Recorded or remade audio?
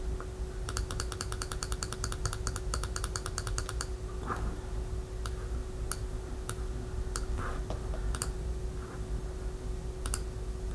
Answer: recorded